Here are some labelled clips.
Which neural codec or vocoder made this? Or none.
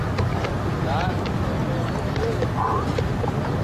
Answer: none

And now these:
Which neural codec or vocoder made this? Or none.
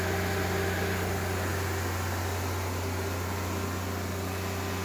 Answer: none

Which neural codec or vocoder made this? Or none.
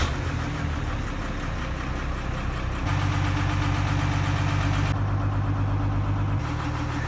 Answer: none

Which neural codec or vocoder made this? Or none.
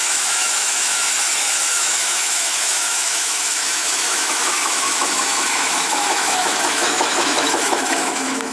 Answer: autoencoder, DAC-VAE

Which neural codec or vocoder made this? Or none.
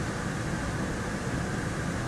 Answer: none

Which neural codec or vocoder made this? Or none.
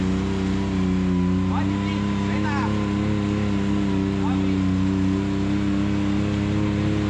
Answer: none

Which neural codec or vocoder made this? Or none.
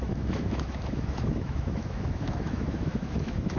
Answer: autoencoder, DAC-VAE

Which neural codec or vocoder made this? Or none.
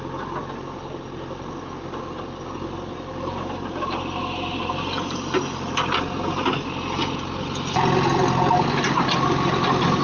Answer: none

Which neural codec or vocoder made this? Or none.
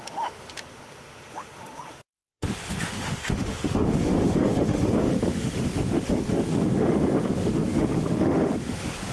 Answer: autoencoder, DAC-VAE